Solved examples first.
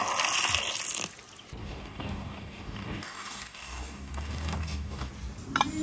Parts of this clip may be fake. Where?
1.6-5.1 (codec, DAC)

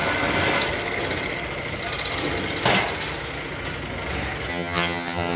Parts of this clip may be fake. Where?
4.5-5.4 (vocoder, HiFi-GAN)

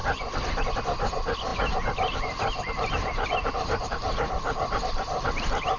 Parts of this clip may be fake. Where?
none

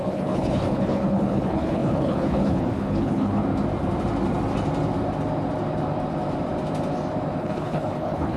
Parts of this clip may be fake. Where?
0.0-3.4 (codec, HILCodec); 7.4-8.4